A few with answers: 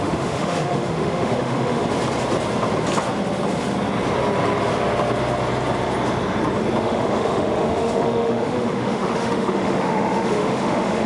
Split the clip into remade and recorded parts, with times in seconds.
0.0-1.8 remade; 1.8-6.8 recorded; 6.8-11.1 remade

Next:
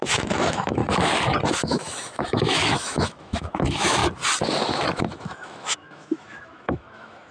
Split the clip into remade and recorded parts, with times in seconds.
0.0-0.8 remade; 0.8-1.5 recorded; 1.5-4.0 remade; 4.0-4.9 recorded; 4.9-7.3 remade